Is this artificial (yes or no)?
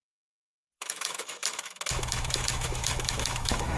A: yes